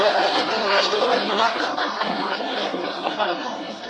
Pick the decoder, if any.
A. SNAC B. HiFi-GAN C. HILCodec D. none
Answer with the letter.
A